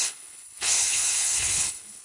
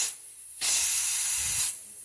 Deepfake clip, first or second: first